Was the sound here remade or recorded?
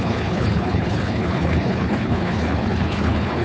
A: remade